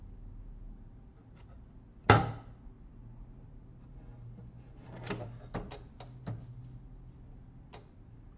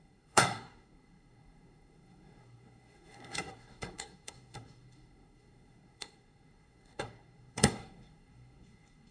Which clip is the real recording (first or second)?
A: first